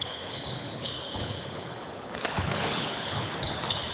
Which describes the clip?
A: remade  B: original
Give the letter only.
A